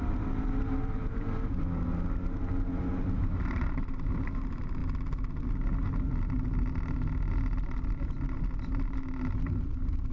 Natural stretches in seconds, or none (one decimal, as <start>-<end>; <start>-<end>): 4.8-9.5